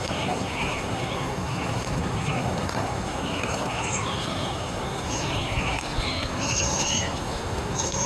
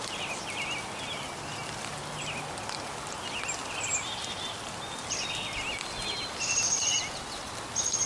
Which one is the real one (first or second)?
second